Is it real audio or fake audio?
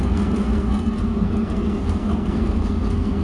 fake